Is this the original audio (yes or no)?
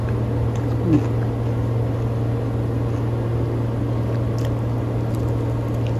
yes